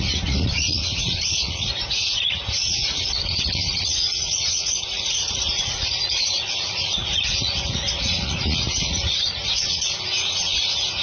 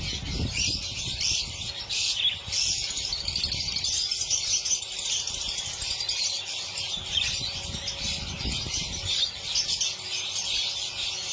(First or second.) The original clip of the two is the second